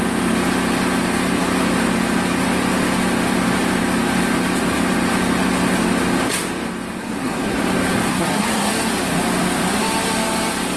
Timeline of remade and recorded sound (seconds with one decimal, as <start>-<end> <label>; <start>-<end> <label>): 0.0-7.0 recorded; 7.0-7.6 remade; 7.6-8.1 recorded; 8.1-8.7 remade; 8.7-10.8 recorded